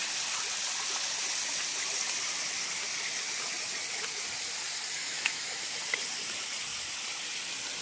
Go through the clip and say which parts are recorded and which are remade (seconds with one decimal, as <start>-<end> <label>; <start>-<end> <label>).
0.0-5.0 recorded; 5.0-5.7 remade; 5.7-7.8 recorded